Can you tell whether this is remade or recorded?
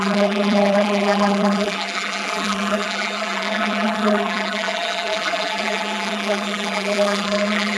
remade